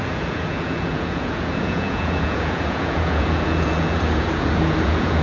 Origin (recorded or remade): remade